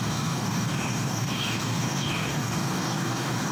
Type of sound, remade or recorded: remade